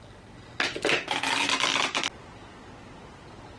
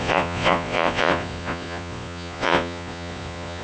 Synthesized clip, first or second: second